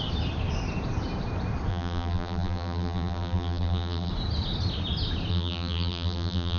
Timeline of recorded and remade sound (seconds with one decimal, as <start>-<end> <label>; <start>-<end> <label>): 0.0-1.7 recorded; 1.7-4.1 remade; 4.1-5.3 recorded; 5.3-6.6 remade

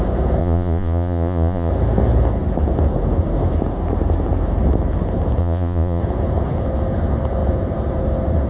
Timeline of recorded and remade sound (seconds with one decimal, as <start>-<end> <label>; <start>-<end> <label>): 0.0-0.4 recorded; 0.4-1.7 remade; 1.7-5.4 recorded; 5.4-6.0 remade; 6.0-8.5 recorded

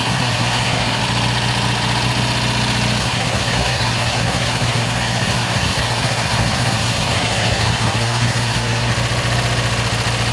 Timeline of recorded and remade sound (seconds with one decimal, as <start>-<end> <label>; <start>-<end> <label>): 0.0-1.0 remade; 1.0-3.0 recorded; 3.0-8.9 remade; 8.9-10.3 recorded

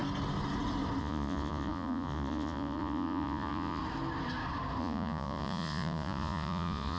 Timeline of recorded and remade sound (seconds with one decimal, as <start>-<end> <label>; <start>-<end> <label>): 0.0-1.0 recorded; 1.0-3.8 remade; 3.8-4.8 recorded; 4.8-7.0 remade

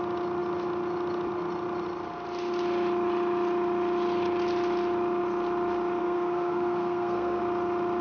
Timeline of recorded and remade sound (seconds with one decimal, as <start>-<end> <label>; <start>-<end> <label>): 0.0-6.0 recorded; 6.0-7.4 remade; 7.4-8.0 recorded

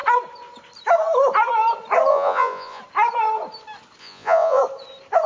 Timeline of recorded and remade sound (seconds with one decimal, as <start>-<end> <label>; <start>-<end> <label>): 0.0-2.1 recorded; 2.1-2.8 remade; 2.8-4.0 recorded; 4.0-4.6 remade; 4.6-5.3 recorded

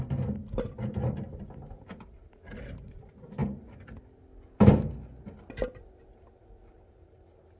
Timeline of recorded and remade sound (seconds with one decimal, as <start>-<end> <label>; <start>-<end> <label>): 0.0-7.6 recorded

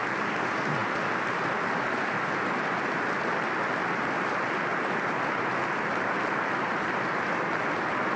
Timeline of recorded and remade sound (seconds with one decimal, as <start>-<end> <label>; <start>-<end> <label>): 0.0-8.2 recorded